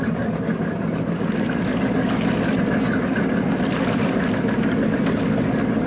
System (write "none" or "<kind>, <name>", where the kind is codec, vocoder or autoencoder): none